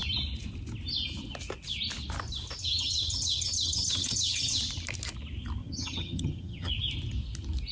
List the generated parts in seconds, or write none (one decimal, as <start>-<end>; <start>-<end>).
2.6-4.6; 5.6-6.7